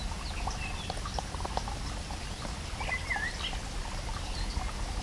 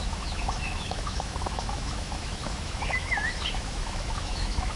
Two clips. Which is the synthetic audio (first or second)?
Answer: second